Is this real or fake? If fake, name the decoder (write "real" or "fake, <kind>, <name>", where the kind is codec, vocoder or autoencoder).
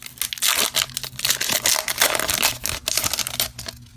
real